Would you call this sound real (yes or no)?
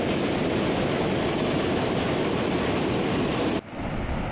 yes